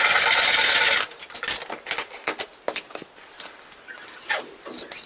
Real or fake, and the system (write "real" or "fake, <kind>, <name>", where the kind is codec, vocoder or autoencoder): real